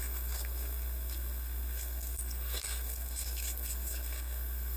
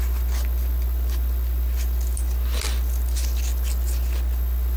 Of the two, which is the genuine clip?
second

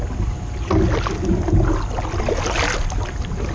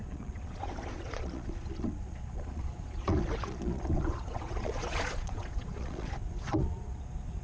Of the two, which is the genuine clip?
first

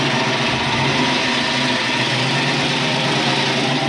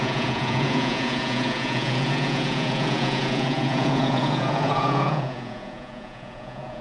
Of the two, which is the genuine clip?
first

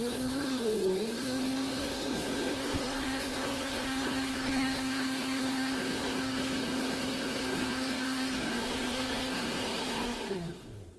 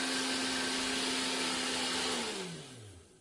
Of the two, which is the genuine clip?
second